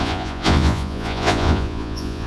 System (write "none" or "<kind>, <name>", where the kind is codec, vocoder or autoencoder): vocoder, Vocos